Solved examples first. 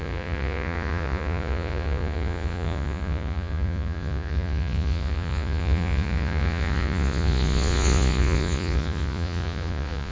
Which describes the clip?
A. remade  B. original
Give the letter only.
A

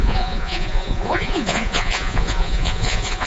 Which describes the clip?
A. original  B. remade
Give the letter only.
B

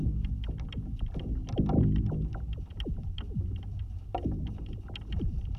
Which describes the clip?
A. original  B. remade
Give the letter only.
A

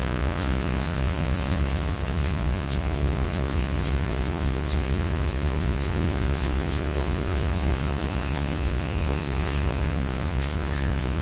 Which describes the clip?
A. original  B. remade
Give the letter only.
B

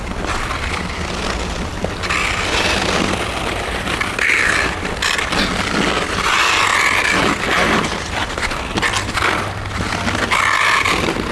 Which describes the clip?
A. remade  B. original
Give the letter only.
B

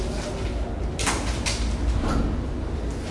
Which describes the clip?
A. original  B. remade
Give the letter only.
A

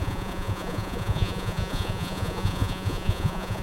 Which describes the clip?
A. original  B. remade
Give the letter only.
B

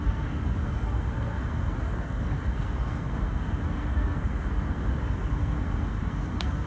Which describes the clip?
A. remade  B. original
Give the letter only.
A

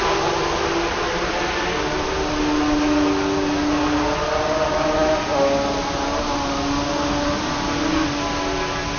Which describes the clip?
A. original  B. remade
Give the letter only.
A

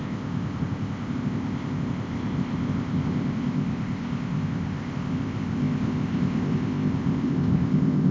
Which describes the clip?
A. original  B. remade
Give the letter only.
B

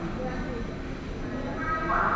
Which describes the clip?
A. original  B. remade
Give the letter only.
A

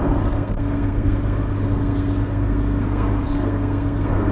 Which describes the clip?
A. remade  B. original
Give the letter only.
A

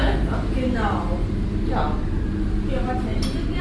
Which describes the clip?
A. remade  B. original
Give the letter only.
B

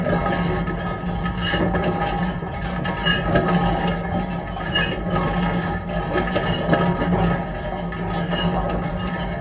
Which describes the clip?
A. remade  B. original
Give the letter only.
B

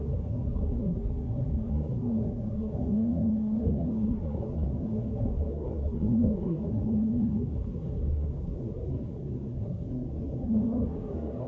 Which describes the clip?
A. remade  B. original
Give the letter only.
A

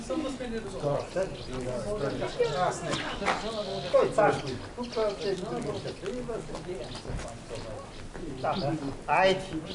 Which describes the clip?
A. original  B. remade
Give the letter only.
A